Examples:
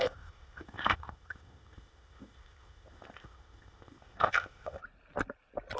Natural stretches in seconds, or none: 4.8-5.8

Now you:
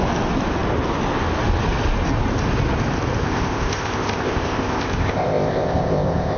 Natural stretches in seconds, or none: 0.0-3.2

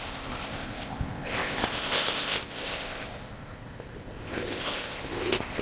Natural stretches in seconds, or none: none

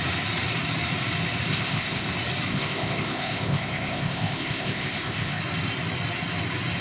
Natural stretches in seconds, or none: 0.0-1.5; 2.1-2.5; 5.4-6.8

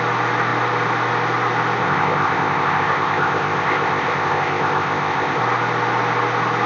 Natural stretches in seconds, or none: 0.0-1.8; 5.4-6.7

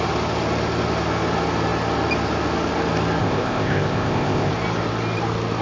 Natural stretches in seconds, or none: 0.0-3.2; 4.5-5.6

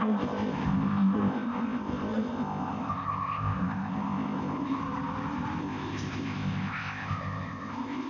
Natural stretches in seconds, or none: 4.8-5.6

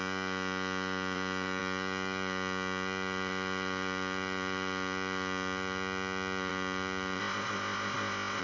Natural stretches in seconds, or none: 0.0-7.2